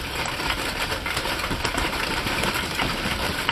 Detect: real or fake fake